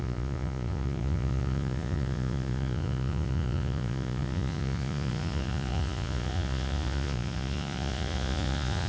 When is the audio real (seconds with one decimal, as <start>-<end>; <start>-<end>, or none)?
none